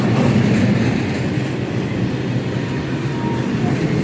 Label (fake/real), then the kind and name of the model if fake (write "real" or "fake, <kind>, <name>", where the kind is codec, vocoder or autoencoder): fake, vocoder, BigVGAN v2